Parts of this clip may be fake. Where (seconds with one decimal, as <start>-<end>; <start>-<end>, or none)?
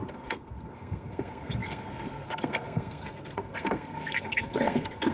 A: 0.0-5.1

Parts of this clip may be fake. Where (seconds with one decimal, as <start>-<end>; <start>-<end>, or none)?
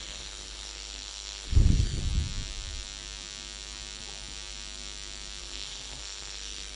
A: 0.0-2.0; 5.4-6.8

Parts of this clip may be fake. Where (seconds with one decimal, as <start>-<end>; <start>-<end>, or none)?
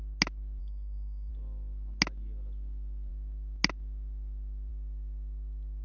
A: 0.6-1.3